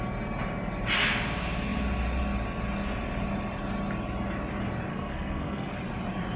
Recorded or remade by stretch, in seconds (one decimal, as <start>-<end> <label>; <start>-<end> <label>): 0.0-4.9 recorded; 4.9-5.7 remade; 5.7-6.4 recorded